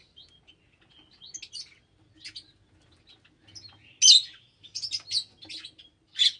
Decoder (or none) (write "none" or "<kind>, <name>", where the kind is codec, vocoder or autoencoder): none